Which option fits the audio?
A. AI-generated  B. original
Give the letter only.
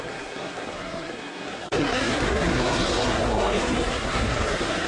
A